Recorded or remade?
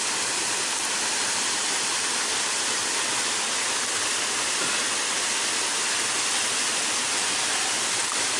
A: recorded